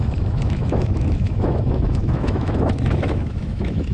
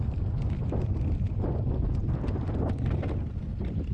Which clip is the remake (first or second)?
first